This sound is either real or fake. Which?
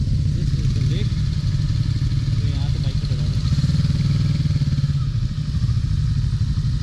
real